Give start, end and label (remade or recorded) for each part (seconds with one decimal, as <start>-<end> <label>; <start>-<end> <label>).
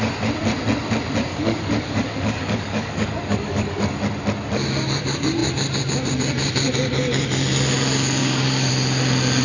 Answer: 0.0-1.3 recorded; 1.3-4.0 remade; 4.0-8.2 recorded; 8.2-8.7 remade; 8.7-9.4 recorded